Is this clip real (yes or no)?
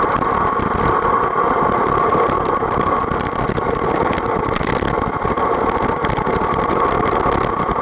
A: yes